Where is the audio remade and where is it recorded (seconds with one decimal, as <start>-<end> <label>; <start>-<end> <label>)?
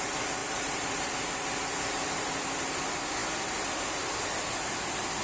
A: 0.0-0.4 recorded; 0.4-1.1 remade; 1.1-5.2 recorded